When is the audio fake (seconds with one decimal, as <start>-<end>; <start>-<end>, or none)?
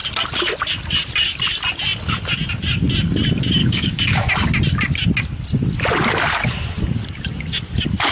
3.6-4.3